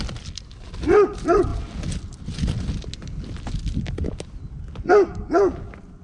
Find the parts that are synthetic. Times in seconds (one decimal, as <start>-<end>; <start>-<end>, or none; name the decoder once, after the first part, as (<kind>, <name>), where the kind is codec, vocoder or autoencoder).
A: none